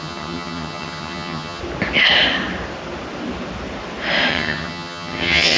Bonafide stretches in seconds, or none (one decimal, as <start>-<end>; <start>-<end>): 1.6-4.3